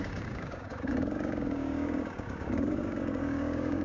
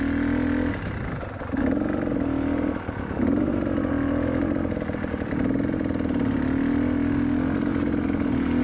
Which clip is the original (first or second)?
second